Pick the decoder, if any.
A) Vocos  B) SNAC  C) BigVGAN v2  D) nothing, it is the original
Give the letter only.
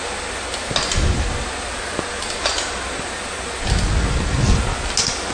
D